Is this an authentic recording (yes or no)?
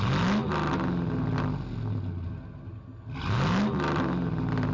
yes